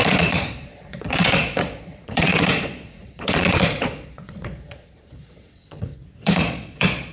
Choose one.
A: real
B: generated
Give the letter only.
B